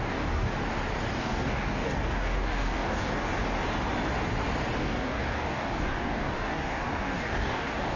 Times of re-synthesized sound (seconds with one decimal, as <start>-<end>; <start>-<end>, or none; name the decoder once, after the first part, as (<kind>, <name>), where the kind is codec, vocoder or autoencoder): 0.0-0.5 (codec, DAC); 1.2-3.3; 4.8-8.0